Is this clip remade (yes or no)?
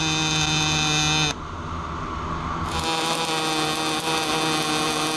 no